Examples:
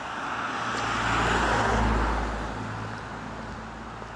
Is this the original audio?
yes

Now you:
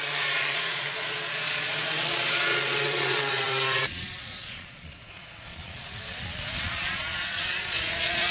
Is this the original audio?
no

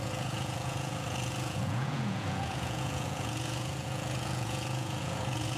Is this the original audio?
no